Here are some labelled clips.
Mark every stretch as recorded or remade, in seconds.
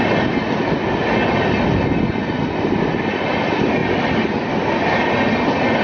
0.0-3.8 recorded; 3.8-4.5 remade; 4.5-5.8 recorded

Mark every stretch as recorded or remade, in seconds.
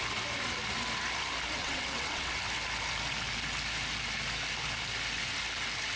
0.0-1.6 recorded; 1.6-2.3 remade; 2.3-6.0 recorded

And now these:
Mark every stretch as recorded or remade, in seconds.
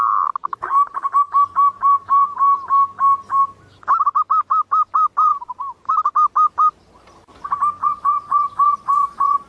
0.0-7.8 recorded; 7.8-9.5 remade